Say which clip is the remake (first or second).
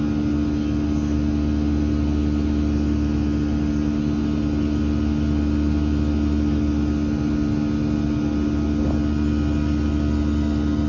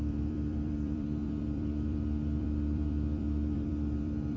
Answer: second